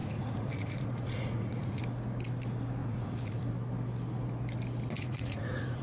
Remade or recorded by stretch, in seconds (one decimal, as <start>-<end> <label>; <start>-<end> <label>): 0.0-1.8 remade; 1.8-2.8 recorded; 2.8-3.5 remade; 3.5-5.0 recorded; 5.0-5.8 remade